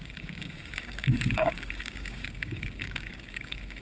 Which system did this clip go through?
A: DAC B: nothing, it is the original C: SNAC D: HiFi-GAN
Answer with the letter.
A